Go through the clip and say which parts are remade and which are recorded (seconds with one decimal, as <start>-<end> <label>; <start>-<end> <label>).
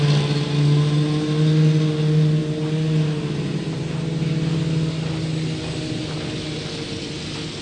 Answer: 0.0-7.6 recorded